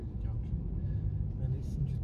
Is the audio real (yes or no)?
no